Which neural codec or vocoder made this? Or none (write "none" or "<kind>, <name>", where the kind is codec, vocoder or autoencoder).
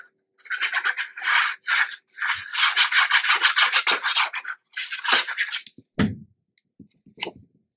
none